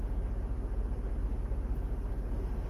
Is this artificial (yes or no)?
no